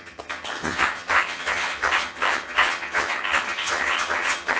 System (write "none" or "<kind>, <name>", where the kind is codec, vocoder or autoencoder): vocoder, HiFi-GAN